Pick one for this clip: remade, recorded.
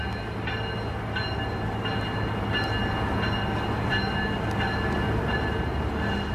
recorded